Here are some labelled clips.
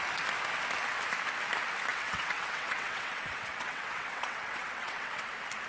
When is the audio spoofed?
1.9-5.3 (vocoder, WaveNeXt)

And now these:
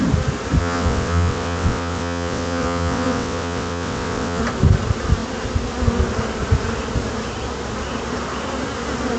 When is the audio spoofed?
0.6-4.4 (vocoder, WaveNeXt)

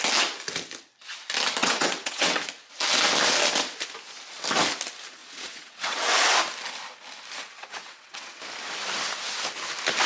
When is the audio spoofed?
1.6-2.4 (vocoder, WaveNeXt); 5.2-6.1; 7.4-8.4

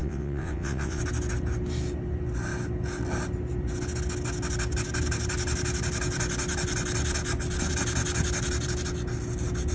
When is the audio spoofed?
0.0-1.0 (vocoder, WaveNeXt)

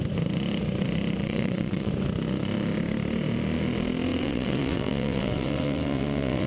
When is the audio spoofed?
1.2-1.9 (vocoder, WaveNeXt); 4.1-6.5

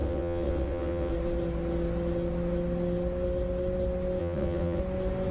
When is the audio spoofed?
0.0-1.1 (vocoder, WaveNeXt); 4.2-4.8